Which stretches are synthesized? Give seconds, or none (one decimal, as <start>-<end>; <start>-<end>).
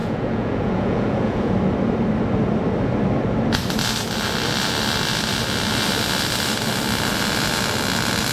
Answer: 0.0-1.5